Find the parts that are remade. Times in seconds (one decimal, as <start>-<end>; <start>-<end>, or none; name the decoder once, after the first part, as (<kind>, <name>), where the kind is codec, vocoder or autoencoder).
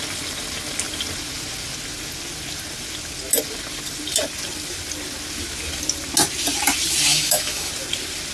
7.1-7.7 (autoencoder, DAC-VAE)